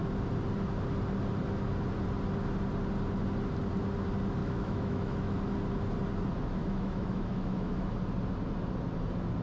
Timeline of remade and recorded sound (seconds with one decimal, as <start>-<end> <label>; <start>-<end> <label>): 0.0-4.4 recorded; 4.4-5.4 remade; 5.4-6.6 recorded; 6.6-7.9 remade; 7.9-9.4 recorded